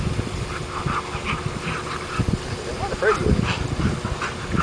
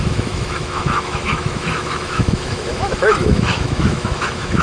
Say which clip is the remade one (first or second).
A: second